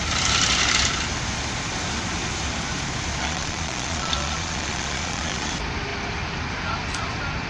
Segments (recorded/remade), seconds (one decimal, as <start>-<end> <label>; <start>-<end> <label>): 0.0-3.2 recorded; 3.2-5.5 remade; 5.5-7.5 recorded